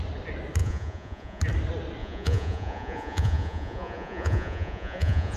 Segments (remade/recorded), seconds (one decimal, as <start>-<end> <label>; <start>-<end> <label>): 0.0-0.6 recorded; 0.6-1.4 remade; 1.4-2.0 recorded; 2.0-5.4 remade